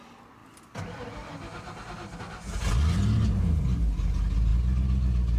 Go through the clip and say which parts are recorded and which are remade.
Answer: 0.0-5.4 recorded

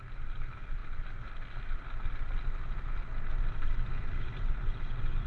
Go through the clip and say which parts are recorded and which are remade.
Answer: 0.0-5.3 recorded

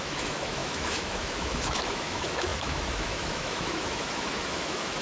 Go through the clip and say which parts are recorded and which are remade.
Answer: 0.0-5.0 remade